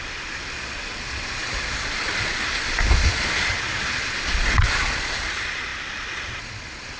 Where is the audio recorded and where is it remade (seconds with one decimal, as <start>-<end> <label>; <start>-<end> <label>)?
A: 0.0-7.0 remade